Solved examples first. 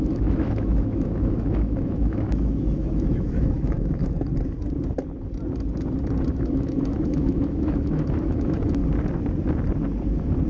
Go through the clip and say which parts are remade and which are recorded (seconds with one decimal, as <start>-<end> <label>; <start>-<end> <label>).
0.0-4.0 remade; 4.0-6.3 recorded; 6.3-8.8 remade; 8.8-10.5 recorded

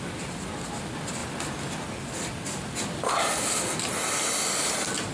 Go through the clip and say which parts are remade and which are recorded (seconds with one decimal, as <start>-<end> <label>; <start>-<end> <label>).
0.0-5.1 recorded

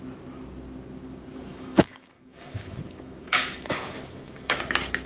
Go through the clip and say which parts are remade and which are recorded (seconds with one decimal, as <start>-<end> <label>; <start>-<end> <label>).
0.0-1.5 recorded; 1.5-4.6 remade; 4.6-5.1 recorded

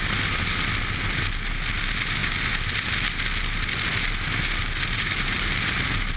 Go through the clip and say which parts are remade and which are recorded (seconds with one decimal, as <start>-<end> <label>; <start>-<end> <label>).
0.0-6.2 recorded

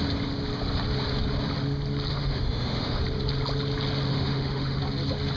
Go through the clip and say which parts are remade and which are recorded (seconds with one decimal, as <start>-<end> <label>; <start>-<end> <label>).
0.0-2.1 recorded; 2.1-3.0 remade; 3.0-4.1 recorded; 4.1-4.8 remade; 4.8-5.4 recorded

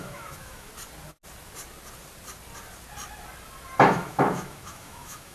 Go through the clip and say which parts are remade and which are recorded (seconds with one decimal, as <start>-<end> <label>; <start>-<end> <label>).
0.0-0.7 remade; 0.7-3.9 recorded; 3.9-5.3 remade